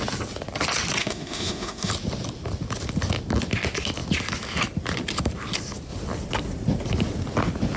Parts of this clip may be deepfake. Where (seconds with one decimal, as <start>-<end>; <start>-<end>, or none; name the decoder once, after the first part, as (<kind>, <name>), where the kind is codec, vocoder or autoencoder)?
1.0-1.9 (autoencoder, DAC-VAE)